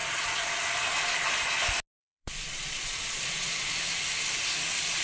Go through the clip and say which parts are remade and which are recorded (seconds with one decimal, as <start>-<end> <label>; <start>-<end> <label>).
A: 0.0-0.5 remade; 0.5-2.0 recorded; 2.0-3.8 remade; 3.8-5.0 recorded